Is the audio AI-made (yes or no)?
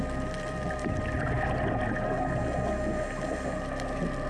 no